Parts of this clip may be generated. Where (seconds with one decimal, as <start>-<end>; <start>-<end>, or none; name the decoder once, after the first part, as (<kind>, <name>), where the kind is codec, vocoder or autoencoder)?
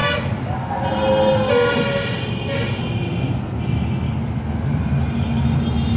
none